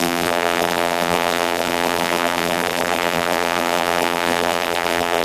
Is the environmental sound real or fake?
fake